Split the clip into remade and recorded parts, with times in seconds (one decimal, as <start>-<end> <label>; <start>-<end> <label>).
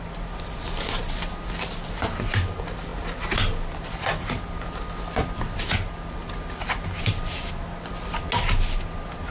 0.0-9.3 recorded